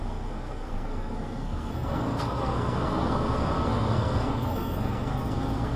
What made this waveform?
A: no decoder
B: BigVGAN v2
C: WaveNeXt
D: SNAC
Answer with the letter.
D